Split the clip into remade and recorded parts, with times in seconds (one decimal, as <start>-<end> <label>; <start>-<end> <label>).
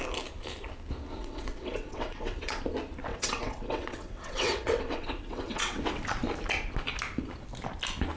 0.0-1.2 recorded; 1.2-2.6 remade; 2.6-3.1 recorded; 3.1-6.0 remade; 6.0-8.2 recorded